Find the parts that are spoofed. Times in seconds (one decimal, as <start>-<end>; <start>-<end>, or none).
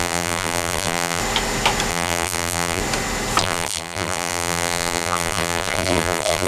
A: 0.0-1.2; 1.9-2.8; 3.4-6.5